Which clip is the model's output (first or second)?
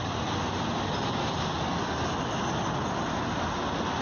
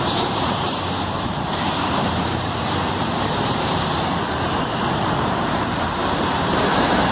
second